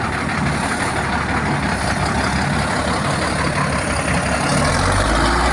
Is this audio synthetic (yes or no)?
no